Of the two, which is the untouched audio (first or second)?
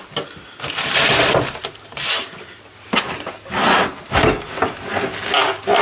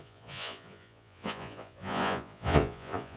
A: first